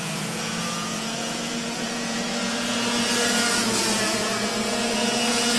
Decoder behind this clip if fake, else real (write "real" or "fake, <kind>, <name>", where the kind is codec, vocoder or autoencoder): fake, vocoder, Vocos